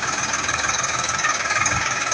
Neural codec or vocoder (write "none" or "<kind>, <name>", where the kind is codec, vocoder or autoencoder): codec, DAC